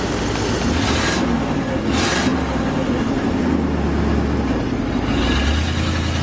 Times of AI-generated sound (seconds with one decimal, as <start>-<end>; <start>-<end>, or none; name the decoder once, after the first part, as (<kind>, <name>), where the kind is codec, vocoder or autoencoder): none